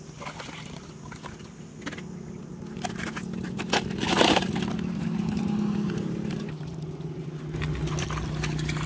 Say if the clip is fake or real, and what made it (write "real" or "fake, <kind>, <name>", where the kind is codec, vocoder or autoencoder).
real